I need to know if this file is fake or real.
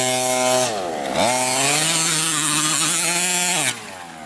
real